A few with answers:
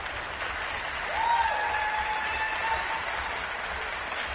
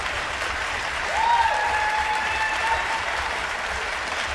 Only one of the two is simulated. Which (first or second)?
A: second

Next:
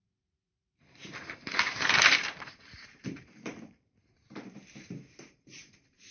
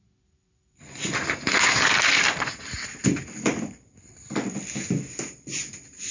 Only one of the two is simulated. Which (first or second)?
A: first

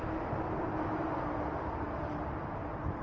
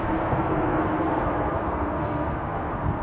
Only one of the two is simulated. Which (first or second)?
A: second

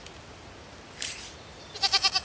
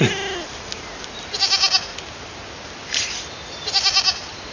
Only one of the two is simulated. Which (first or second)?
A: first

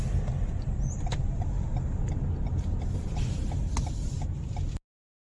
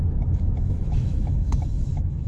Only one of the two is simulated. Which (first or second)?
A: second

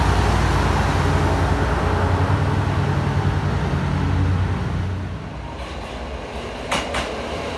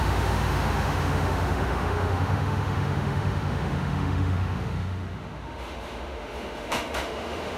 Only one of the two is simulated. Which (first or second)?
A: second